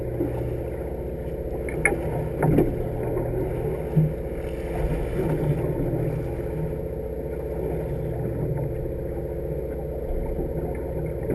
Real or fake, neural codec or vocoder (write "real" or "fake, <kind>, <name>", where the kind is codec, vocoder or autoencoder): real